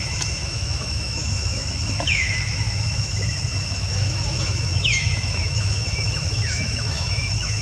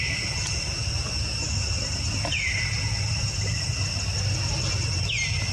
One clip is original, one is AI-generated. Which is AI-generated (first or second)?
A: first